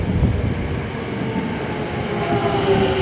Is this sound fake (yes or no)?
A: no